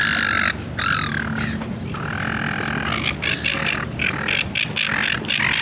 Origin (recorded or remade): recorded